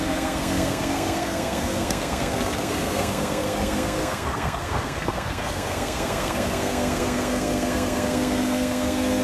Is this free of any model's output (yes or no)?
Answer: no